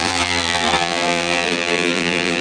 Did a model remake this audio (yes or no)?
yes